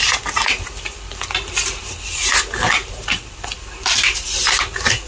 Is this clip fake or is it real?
real